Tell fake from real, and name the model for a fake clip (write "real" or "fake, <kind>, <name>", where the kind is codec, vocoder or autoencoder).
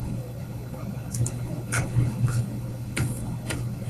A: fake, codec, HILCodec